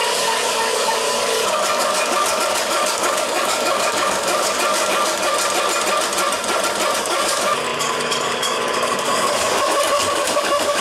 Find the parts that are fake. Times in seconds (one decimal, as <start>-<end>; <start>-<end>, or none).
0.0-5.3; 7.0-10.8